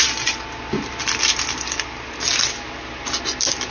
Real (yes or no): yes